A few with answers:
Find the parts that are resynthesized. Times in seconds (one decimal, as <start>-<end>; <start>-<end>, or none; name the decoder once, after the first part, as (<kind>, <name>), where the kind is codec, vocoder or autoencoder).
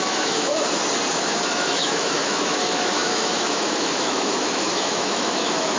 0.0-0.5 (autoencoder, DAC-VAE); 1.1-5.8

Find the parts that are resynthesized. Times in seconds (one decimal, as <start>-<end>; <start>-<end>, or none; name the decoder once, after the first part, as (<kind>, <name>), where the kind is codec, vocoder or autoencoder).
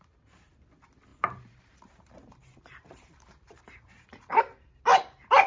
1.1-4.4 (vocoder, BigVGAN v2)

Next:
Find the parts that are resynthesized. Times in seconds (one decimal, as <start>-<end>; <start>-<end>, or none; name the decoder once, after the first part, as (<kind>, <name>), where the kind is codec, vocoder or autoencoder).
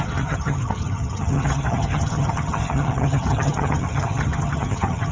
0.0-5.1 (vocoder, HiFi-GAN)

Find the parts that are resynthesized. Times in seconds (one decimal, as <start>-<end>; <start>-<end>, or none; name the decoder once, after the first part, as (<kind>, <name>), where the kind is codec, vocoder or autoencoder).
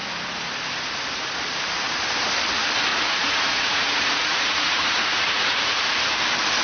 2.9-6.0 (vocoder, Vocos)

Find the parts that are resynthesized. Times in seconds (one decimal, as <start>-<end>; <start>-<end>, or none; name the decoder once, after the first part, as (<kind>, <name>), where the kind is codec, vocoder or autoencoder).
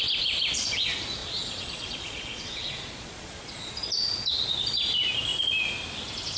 1.2-3.7 (vocoder, Vocos)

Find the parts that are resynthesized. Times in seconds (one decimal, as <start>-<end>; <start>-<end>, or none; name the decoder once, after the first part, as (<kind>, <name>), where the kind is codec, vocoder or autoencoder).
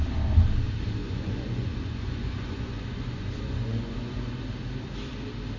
1.0-4.4 (vocoder, Vocos)